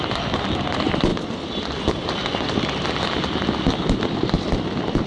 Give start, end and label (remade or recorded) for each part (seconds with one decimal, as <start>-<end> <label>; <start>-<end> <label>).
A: 0.0-5.1 recorded